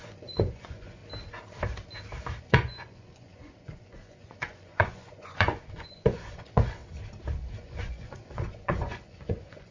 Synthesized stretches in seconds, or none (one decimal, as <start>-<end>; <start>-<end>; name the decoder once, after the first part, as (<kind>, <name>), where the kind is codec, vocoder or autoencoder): 0.0-1.0 (vocoder, Vocos); 2.4-6.8; 7.6-9.7